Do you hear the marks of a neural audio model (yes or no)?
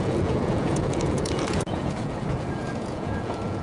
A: yes